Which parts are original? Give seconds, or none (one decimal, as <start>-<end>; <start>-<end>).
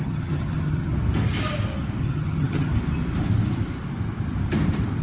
0.9-2.0; 2.7-5.0